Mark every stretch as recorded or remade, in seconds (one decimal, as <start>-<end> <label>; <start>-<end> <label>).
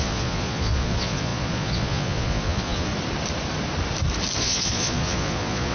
0.0-2.9 remade; 2.9-4.4 recorded; 4.4-5.7 remade